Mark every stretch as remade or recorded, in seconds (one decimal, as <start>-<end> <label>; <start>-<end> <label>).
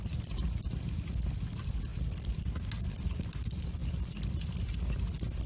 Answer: 0.0-5.5 recorded